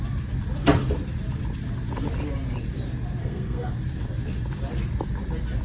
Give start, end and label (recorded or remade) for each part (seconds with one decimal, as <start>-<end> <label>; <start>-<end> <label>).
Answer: 0.0-3.2 recorded; 3.2-3.7 remade; 3.7-5.6 recorded

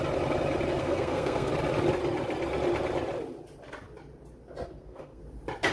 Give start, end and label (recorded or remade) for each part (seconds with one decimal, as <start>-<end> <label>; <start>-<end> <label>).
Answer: 0.0-0.8 recorded; 0.8-1.5 remade; 1.5-4.6 recorded; 4.6-5.2 remade; 5.2-5.7 recorded

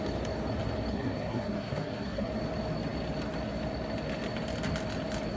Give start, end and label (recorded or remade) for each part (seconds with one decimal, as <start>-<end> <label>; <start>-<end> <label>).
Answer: 0.0-0.9 recorded; 0.9-2.3 remade; 2.3-5.4 recorded

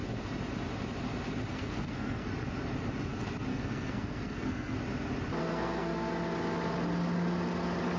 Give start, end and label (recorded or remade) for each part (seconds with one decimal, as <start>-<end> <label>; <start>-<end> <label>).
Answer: 0.0-1.5 recorded; 1.5-2.3 remade; 2.3-3.5 recorded; 3.5-4.8 remade; 4.8-5.4 recorded; 5.4-6.1 remade; 6.1-8.0 recorded

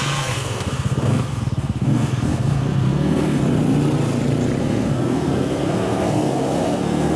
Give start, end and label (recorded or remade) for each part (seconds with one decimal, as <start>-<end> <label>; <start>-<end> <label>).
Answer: 0.0-3.4 remade; 3.4-4.6 recorded; 4.6-7.2 remade

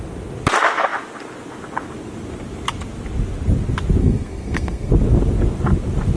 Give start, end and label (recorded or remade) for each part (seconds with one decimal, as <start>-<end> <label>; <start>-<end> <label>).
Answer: 0.0-4.0 recorded; 4.0-4.9 remade; 4.9-6.2 recorded